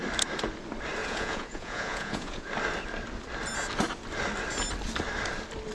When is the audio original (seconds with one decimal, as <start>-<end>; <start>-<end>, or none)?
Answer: 0.0-1.0; 2.5-5.7

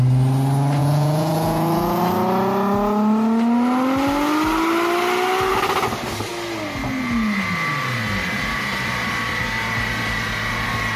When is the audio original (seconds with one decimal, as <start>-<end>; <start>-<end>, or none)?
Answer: 0.0-0.8; 2.0-11.0